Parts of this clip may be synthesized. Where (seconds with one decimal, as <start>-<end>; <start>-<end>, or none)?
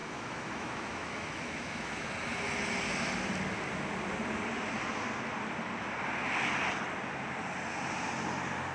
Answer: 0.0-2.1